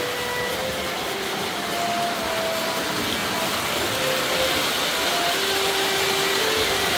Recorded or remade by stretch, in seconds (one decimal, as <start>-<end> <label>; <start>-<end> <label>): 0.0-7.0 recorded